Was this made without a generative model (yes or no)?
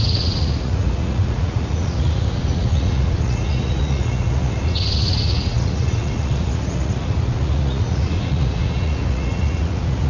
no